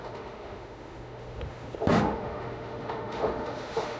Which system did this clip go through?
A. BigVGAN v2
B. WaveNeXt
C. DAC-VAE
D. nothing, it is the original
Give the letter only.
C